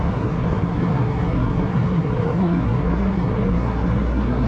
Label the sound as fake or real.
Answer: fake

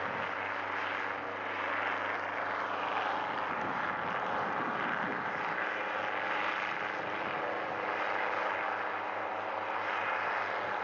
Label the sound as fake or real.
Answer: real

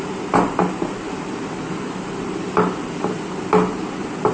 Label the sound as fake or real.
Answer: real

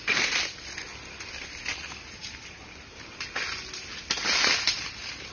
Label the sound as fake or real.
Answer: real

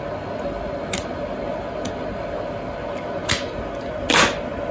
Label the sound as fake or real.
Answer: real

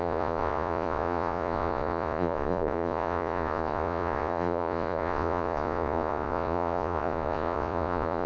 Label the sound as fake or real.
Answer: fake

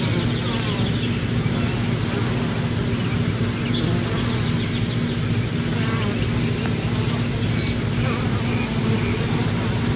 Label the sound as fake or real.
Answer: real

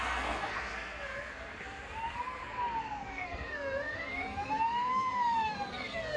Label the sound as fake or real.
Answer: fake